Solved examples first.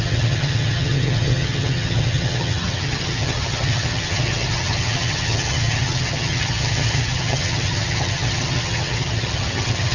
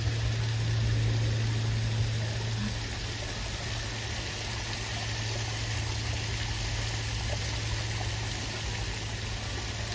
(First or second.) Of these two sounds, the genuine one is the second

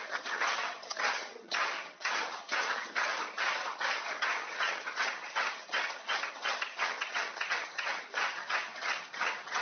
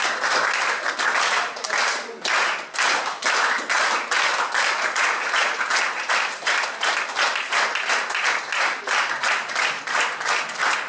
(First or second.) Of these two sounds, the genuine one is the second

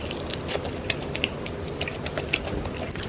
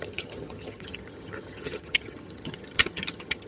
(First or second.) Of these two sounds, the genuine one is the first